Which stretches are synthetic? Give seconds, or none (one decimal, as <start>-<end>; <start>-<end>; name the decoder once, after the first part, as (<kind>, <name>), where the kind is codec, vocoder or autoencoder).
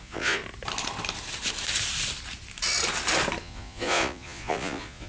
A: 0.0-0.4 (vocoder, Vocos); 3.4-5.1